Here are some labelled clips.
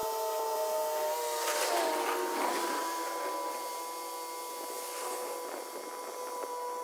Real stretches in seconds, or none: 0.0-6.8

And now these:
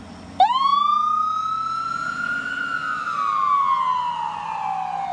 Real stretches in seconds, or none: 0.0-5.1

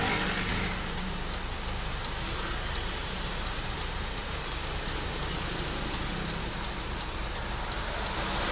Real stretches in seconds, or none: 0.0-0.5; 1.1-3.0; 4.3-8.5

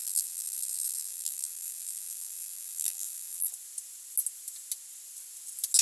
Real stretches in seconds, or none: 3.5-5.8

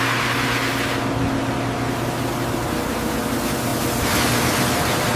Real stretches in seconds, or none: 0.0-5.2

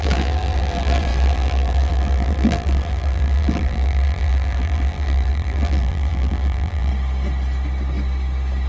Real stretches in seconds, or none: 6.9-8.7

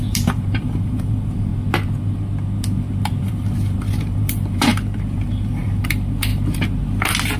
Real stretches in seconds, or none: 1.5-3.2; 6.3-7.4